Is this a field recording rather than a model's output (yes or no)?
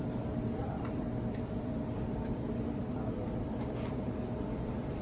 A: no